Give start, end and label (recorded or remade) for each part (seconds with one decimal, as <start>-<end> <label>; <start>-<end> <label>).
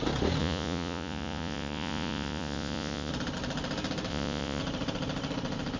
0.0-0.4 recorded; 0.4-3.1 remade; 3.1-4.1 recorded; 4.1-4.6 remade; 4.6-5.8 recorded